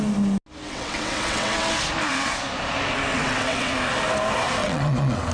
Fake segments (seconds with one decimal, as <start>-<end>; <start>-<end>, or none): 0.6-1.7; 3.1-3.7; 4.6-5.3